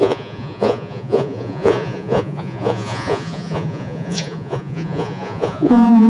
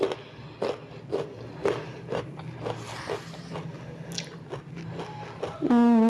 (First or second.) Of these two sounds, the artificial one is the first